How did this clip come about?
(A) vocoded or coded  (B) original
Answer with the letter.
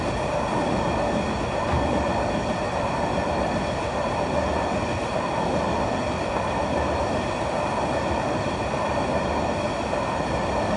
B